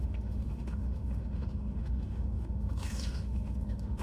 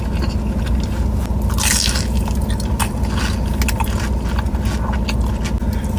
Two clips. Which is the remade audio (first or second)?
first